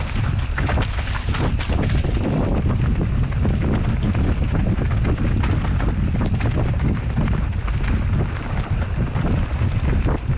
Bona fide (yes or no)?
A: yes